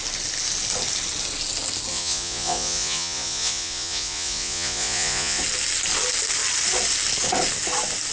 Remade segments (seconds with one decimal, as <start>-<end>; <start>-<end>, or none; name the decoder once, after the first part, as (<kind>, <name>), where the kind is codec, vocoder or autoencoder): 1.9-5.4 (vocoder, Vocos)